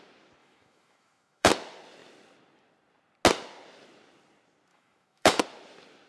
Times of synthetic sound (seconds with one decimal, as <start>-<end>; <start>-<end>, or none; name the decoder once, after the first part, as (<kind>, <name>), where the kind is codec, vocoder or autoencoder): 0.4-1.5 (autoencoder, DAC-VAE); 4.7-5.4